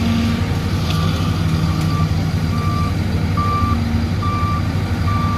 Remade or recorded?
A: recorded